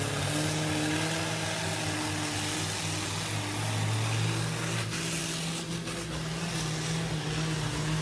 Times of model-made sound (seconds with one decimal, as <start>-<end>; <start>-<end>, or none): none